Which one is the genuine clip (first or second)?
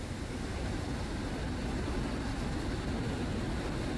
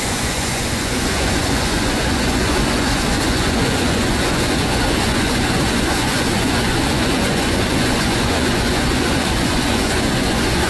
first